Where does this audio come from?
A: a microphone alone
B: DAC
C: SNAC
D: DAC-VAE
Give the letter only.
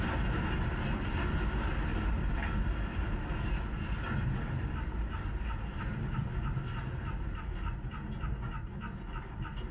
A